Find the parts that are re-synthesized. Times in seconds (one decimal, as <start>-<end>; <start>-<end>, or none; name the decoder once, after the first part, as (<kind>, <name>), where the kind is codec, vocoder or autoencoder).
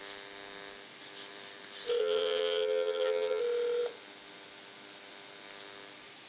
2.0-3.4 (vocoder, HiFi-GAN)